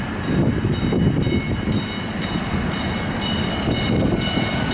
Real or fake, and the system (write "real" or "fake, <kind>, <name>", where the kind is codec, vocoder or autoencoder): real